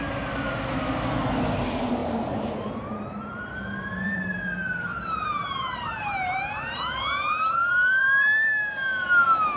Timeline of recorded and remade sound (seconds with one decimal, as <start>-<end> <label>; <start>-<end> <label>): 0.0-2.0 recorded; 2.0-4.2 remade; 4.2-4.9 recorded; 4.9-8.5 remade; 8.5-9.6 recorded